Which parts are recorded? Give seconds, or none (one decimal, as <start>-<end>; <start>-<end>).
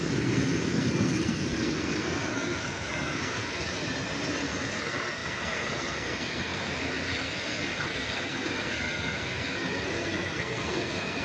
3.8-4.4